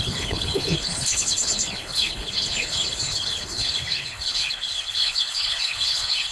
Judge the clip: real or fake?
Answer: fake